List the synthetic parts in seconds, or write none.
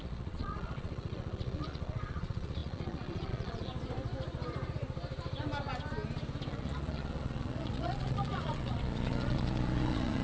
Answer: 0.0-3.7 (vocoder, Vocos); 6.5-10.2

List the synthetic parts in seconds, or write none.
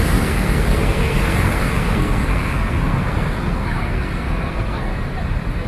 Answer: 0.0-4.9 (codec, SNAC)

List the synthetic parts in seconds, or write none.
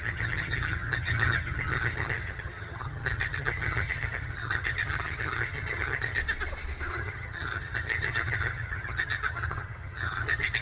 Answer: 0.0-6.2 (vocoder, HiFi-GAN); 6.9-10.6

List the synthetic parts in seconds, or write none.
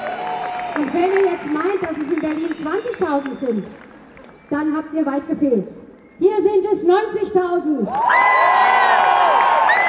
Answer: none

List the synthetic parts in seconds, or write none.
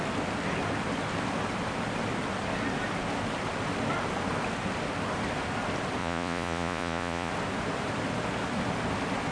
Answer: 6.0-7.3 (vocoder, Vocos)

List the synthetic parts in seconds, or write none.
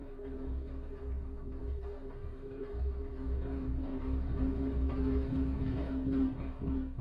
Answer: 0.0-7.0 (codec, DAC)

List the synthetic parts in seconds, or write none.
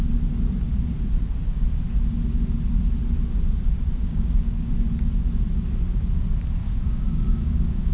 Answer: 4.1-4.7 (codec, DAC); 6.6-7.9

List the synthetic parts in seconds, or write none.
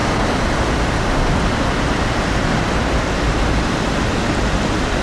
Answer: none